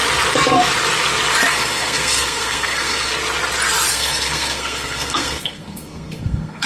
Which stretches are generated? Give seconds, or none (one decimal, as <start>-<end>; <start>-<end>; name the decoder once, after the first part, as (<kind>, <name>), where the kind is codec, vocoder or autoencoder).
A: 1.5-3.1 (codec, SNAC); 3.9-6.7